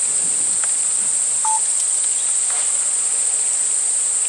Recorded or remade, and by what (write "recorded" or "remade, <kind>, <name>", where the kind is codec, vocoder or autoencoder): recorded